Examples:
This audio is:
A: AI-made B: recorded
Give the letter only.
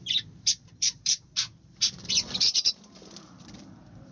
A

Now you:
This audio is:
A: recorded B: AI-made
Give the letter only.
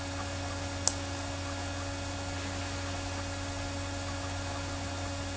A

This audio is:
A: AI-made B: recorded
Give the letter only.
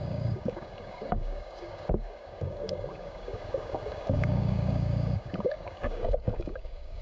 A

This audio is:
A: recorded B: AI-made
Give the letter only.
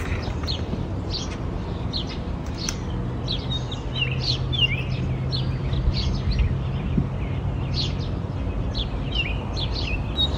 A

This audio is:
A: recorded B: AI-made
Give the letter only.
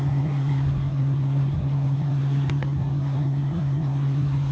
B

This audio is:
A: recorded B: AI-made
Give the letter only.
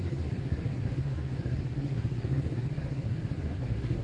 B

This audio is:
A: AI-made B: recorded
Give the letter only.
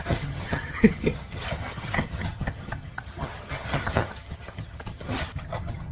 A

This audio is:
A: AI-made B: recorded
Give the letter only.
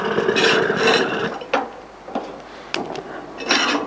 B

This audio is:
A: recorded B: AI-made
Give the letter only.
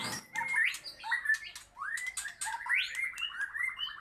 A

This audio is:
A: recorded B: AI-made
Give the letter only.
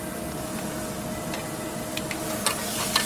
A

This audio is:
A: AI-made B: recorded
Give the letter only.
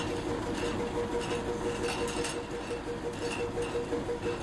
B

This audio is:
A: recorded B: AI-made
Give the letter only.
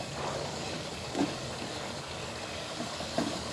B